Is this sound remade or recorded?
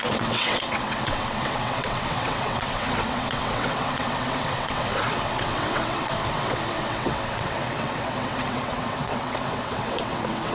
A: remade